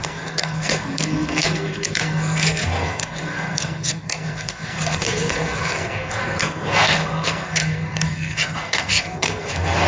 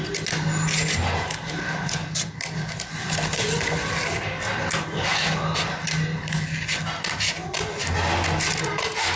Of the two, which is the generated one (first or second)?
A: first